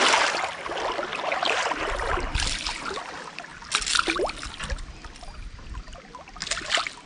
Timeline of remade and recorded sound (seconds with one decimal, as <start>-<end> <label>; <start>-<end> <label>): 0.0-7.1 recorded